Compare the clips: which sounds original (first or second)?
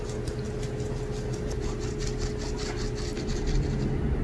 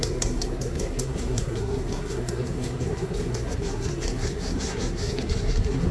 first